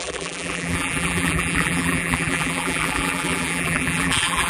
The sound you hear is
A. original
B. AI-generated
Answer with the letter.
B